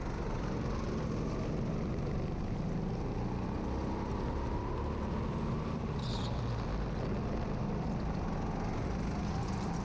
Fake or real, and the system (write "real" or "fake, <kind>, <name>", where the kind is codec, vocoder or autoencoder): real